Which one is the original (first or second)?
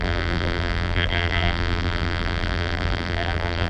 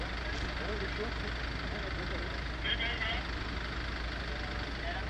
second